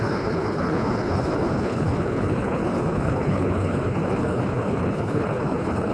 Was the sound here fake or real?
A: fake